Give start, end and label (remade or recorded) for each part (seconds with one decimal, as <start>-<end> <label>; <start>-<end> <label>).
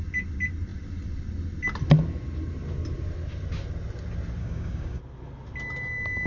0.0-4.4 recorded; 4.4-5.0 remade; 5.0-6.3 recorded